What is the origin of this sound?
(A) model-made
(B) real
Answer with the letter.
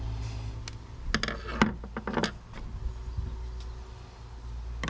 B